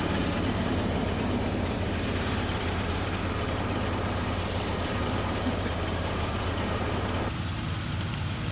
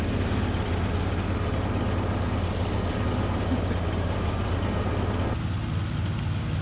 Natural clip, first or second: second